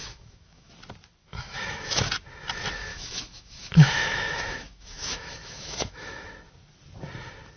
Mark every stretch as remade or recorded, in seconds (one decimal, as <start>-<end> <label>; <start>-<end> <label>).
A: 0.0-0.7 remade; 0.7-1.2 recorded; 1.2-2.1 remade; 2.1-2.9 recorded; 2.9-6.3 remade; 6.3-7.6 recorded